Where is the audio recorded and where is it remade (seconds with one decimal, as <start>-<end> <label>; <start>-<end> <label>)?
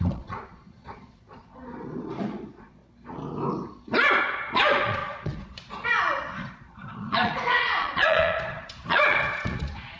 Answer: 0.0-2.8 remade; 2.8-3.7 recorded; 3.7-10.0 remade